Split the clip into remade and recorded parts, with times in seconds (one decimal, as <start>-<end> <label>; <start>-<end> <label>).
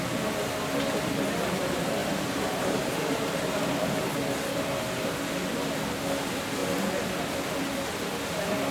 0.0-2.0 recorded; 2.0-4.1 remade; 4.1-8.7 recorded